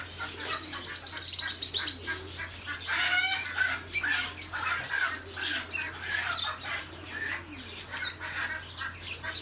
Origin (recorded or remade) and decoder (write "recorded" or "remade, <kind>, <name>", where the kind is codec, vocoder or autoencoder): recorded